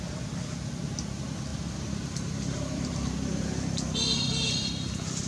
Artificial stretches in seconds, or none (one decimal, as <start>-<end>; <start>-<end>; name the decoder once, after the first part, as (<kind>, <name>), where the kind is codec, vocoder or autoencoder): 1.5-4.7 (vocoder, BigVGAN v2)

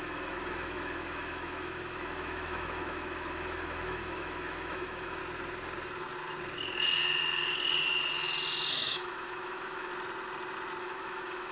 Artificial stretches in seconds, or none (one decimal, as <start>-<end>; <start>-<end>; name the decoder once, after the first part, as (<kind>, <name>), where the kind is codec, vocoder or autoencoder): 0.0-5.2 (autoencoder, DAC-VAE); 8.7-9.9; 10.8-11.5

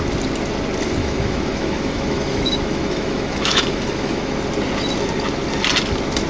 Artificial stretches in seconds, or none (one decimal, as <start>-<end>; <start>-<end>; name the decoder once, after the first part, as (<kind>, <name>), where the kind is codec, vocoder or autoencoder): 1.0-4.4 (autoencoder, DAC-VAE)

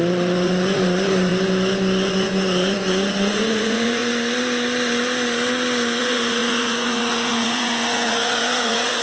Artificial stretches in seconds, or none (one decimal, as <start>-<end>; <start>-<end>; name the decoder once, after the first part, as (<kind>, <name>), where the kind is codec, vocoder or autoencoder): 0.0-1.3 (vocoder, Vocos); 2.1-4.0; 6.0-9.0

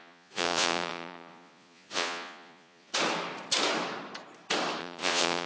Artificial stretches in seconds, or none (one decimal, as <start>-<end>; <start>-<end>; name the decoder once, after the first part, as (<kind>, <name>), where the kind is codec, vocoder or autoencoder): 0.0-2.9 (vocoder, Vocos); 4.8-5.5

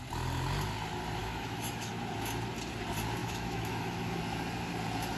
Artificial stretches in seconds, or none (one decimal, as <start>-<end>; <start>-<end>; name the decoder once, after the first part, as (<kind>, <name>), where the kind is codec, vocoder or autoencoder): 1.2-1.9 (autoencoder, DAC-VAE); 3.2-4.2